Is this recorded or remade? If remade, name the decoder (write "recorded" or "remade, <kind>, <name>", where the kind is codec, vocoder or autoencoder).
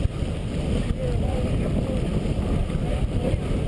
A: recorded